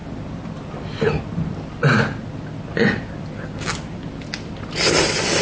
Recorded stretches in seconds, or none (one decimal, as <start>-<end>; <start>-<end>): 0.0-5.4